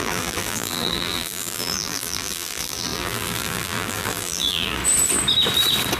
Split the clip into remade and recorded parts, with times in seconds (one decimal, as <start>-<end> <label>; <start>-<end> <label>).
0.0-4.8 remade; 4.8-6.0 recorded